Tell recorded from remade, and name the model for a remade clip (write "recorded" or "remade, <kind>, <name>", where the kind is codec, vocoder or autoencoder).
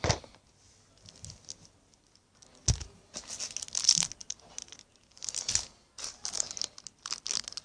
recorded